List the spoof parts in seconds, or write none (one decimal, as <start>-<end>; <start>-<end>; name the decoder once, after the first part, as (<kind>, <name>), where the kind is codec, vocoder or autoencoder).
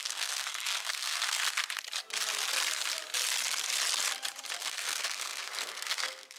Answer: 0.0-1.6 (codec, SNAC); 4.6-6.4